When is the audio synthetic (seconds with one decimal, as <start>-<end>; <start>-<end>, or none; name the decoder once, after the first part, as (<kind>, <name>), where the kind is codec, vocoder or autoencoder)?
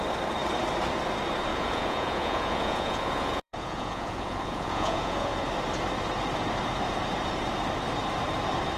1.5-5.5 (vocoder, Vocos)